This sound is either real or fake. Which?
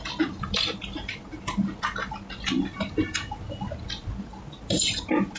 real